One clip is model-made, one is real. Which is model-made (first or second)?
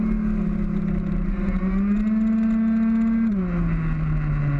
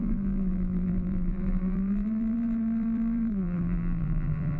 second